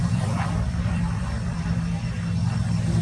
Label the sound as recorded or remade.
remade